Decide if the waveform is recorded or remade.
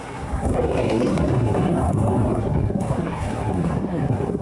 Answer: remade